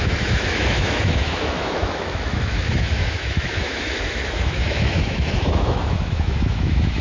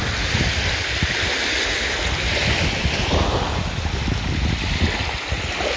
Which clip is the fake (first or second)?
first